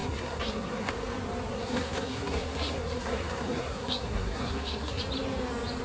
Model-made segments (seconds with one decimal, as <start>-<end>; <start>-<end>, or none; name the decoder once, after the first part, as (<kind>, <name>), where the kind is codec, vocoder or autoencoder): 0.0-0.9 (codec, SNAC); 1.5-5.0

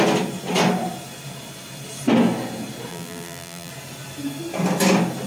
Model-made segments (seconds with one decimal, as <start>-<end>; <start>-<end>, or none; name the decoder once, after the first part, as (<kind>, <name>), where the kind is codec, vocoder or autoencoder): 2.9-3.7 (vocoder, BigVGAN v2)